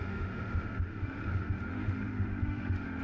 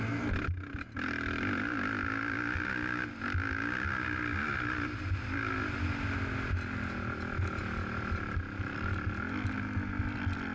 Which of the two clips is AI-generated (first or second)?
first